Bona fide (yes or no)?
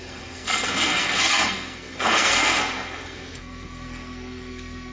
no